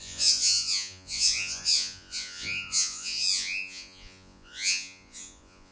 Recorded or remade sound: remade